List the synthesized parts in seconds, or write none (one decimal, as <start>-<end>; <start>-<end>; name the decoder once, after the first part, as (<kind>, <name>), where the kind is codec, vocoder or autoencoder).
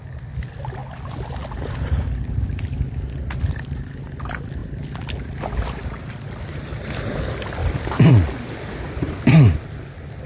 none